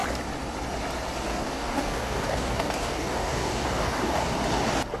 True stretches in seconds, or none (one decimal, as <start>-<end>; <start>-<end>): 0.0-1.3; 4.3-5.0